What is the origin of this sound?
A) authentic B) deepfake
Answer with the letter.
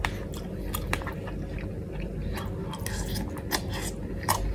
A